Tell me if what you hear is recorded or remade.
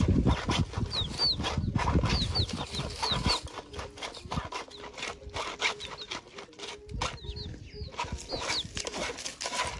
recorded